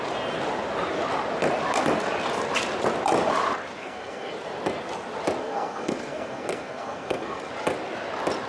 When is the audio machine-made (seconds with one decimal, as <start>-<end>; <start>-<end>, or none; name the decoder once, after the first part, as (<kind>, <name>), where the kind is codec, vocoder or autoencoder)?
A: 3.8-4.3 (codec, SNAC); 5.4-7.5